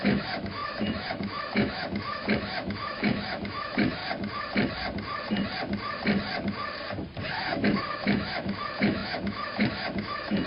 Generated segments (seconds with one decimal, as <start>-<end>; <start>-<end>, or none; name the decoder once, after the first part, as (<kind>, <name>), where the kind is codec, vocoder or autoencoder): 0.0-4.0 (autoencoder, DAC-VAE); 7.3-10.5